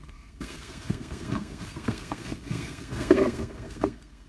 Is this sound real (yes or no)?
no